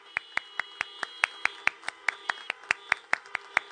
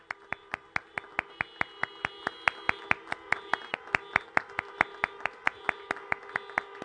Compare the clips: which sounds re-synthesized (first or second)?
first